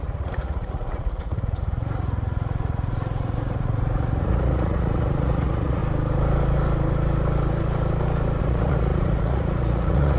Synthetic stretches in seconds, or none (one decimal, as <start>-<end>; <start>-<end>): 0.0-5.8; 8.4-10.2

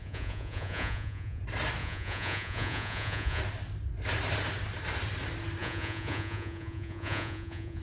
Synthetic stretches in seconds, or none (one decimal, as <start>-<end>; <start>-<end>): 0.0-1.4; 1.8-3.4; 5.6-7.8

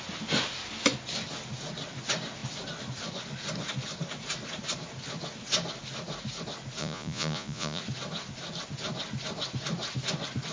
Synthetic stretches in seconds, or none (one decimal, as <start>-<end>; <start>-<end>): 6.8-7.8

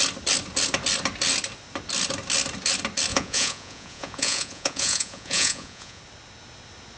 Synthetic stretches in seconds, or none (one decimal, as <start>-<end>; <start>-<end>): 3.1-6.0

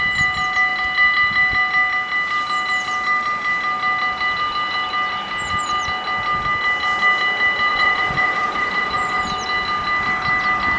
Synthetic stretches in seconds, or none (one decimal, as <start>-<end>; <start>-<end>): 7.7-9.2

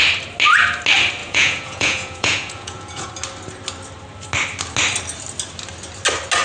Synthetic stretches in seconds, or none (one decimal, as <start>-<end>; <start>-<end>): 1.2-3.1

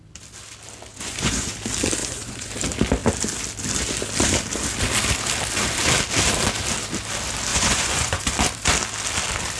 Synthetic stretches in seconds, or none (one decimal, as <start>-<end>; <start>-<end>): 0.9-1.5; 2.0-2.5; 7.5-8.3